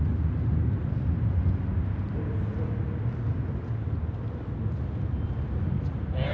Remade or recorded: recorded